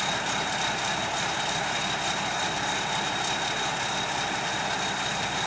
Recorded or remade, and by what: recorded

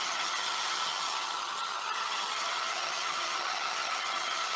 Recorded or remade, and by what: remade, vocoder, HiFi-GAN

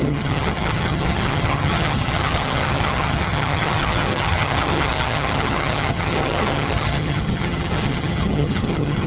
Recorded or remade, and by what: remade, vocoder, HiFi-GAN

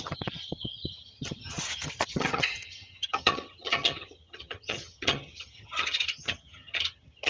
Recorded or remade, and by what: remade, vocoder, HiFi-GAN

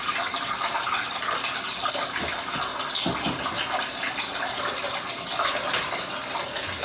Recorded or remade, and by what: recorded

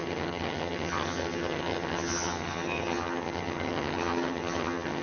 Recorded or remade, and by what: remade, vocoder, HiFi-GAN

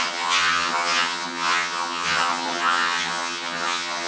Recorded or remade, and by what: remade, vocoder, HiFi-GAN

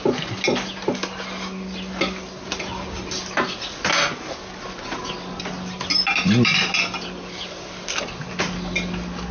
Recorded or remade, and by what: recorded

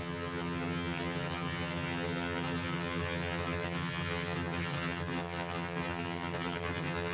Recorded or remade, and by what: remade, vocoder, HiFi-GAN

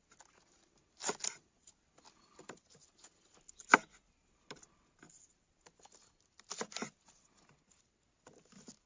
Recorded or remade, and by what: recorded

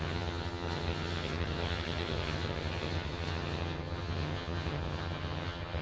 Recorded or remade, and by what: remade, vocoder, HiFi-GAN